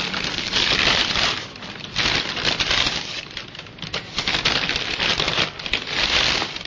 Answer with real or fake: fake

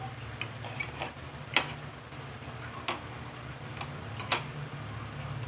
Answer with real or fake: real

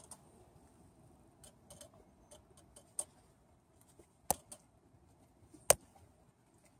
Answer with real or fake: real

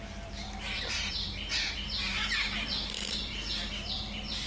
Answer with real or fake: fake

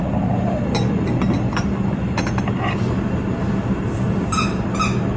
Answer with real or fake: real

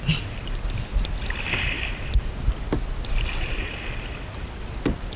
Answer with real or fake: real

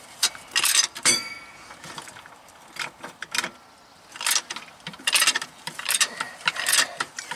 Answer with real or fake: fake